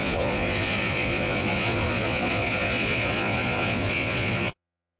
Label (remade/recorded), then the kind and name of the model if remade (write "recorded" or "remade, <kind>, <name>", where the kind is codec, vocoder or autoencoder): remade, vocoder, Vocos